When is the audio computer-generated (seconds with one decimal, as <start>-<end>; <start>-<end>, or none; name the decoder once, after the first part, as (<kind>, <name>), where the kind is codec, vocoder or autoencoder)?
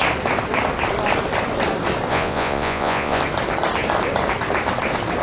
2.1-3.2 (vocoder, Vocos)